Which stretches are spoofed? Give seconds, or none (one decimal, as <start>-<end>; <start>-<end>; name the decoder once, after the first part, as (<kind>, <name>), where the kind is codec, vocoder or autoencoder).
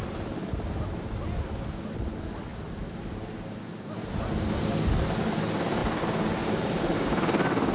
none